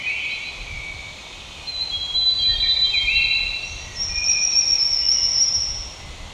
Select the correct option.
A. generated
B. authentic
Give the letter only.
B